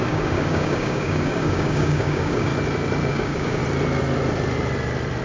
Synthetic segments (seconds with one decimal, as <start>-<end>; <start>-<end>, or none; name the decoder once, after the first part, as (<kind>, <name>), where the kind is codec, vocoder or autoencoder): 0.0-2.5 (codec, DAC); 3.1-3.6